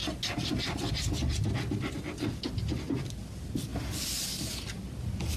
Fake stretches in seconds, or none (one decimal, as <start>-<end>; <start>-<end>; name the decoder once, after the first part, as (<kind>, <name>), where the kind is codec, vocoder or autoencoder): none